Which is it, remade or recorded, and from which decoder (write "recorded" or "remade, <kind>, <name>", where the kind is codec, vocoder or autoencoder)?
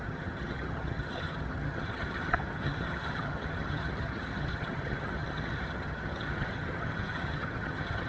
remade, vocoder, HiFi-GAN